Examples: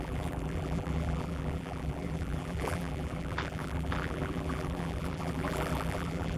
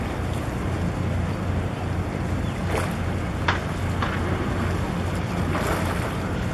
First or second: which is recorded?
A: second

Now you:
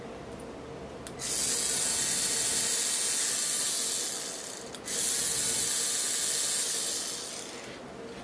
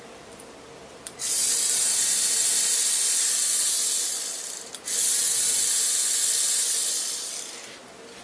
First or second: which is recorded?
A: first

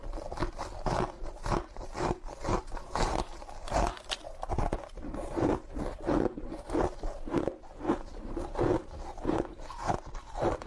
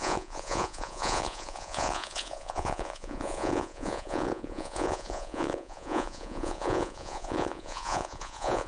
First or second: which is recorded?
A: first